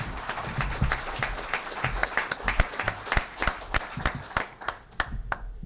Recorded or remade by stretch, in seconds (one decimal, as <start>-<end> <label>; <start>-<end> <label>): 0.0-5.7 recorded